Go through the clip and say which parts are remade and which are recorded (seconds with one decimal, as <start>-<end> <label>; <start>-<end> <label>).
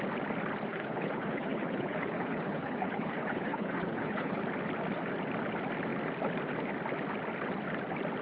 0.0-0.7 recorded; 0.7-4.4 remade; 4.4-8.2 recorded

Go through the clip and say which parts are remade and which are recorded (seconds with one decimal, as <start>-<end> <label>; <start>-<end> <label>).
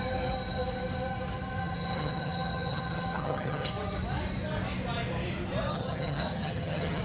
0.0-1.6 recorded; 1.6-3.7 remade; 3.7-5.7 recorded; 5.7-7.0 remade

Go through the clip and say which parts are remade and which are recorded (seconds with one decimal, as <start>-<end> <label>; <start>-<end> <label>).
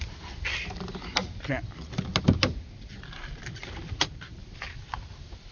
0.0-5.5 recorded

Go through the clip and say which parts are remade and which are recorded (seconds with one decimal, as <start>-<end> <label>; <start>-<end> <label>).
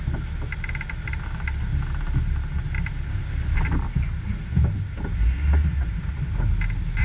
0.0-7.0 recorded